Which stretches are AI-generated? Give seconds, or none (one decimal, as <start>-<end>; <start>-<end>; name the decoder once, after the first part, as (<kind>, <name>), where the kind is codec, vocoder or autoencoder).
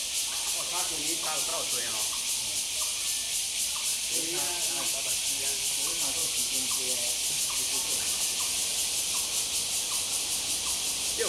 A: 1.5-2.6 (vocoder, BigVGAN v2)